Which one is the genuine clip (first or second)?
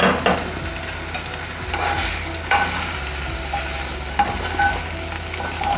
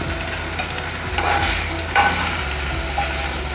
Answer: first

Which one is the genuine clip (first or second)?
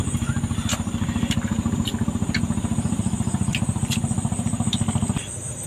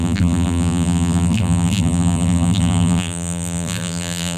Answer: first